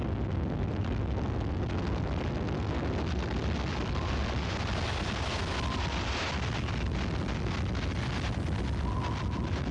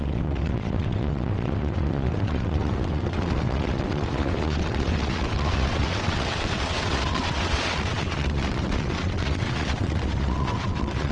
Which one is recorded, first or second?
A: first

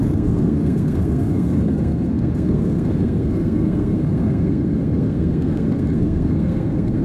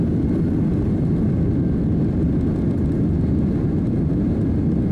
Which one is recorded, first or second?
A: second